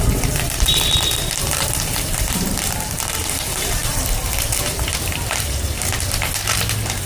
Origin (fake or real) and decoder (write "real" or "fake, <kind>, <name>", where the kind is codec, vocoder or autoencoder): fake, vocoder, BigVGAN v2